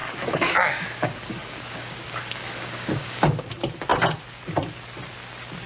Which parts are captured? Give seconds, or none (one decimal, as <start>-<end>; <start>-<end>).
3.4-5.7